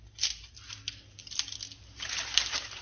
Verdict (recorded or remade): recorded